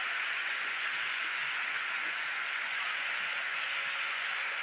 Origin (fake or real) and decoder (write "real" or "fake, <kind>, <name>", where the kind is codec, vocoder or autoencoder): fake, vocoder, Vocos